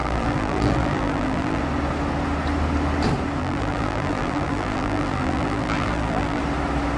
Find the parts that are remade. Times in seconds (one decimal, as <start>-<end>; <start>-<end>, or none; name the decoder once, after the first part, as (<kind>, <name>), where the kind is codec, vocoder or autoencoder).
0.0-1.6 (vocoder, BigVGAN v2); 3.4-6.4